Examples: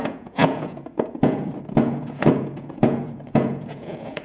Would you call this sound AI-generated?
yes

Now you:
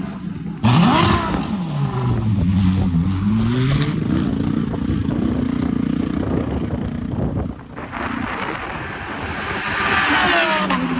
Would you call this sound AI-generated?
no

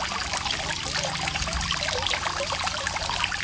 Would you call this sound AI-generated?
no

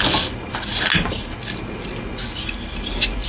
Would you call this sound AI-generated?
no